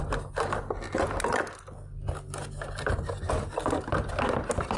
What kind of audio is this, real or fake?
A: real